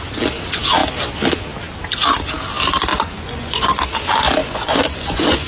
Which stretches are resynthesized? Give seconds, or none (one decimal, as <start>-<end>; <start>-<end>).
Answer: 2.9-3.7; 4.4-5.5